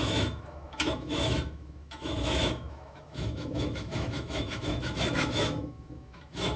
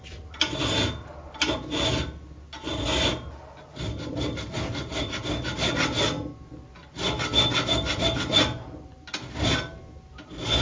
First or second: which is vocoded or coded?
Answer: first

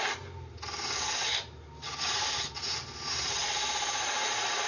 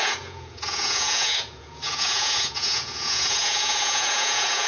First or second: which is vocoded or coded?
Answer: second